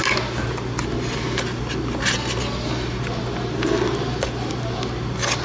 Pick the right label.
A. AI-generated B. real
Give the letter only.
B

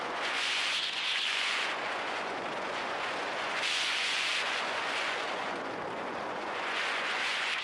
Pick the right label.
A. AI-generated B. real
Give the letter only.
A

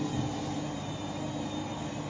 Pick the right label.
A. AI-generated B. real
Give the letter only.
B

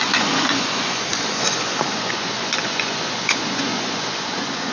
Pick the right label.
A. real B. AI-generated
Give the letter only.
B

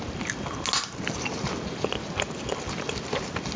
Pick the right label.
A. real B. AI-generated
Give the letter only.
A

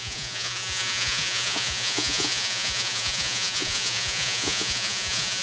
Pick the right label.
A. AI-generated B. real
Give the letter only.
A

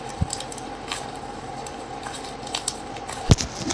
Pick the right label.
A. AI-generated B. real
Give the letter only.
B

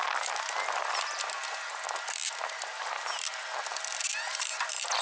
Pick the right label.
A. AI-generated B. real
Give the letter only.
B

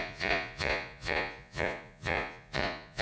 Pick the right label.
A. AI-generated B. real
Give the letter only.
A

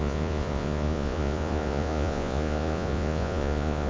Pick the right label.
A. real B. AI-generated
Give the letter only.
B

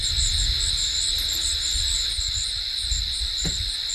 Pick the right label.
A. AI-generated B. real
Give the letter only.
B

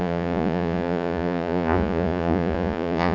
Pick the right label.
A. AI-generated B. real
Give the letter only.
A